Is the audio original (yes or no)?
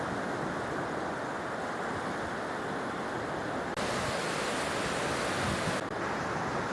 yes